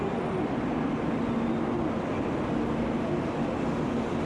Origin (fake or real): real